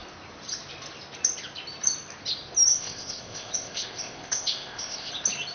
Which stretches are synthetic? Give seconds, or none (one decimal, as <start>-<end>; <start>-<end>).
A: 2.7-5.1